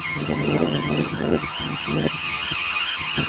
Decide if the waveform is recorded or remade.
remade